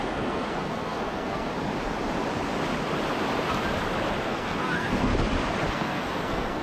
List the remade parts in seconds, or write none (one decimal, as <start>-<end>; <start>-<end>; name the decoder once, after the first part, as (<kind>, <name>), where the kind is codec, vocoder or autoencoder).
0.0-1.5 (codec, SNAC); 4.2-5.1; 5.7-6.6